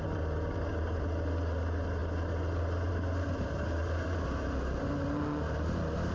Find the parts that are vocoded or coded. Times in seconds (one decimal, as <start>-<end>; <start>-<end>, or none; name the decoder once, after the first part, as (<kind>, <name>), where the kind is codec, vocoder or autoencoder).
none